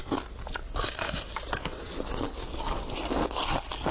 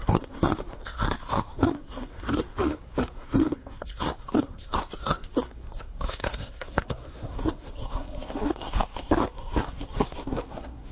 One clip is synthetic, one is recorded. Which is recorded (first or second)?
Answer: first